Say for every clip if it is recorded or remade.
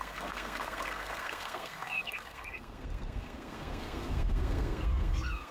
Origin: remade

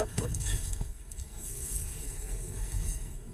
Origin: remade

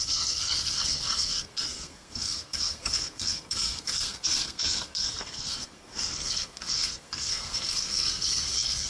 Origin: remade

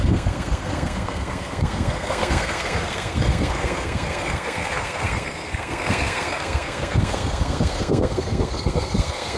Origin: remade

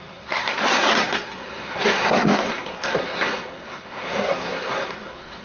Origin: remade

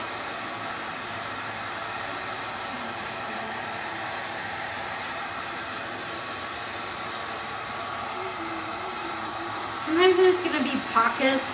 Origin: remade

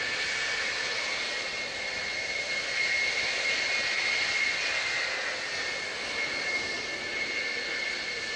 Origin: recorded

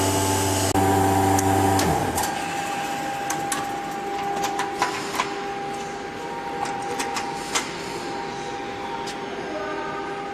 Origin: recorded